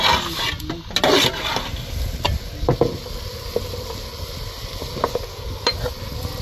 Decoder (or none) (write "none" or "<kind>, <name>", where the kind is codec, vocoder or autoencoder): none